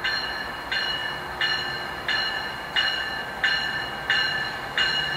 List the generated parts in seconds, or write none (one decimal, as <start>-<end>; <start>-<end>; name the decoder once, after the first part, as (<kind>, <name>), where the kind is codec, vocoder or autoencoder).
none